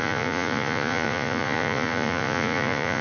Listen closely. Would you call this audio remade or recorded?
remade